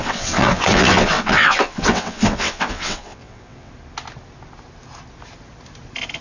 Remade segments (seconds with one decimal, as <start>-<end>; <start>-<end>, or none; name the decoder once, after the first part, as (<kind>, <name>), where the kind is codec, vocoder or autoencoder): 0.0-3.7 (vocoder, WaveNeXt)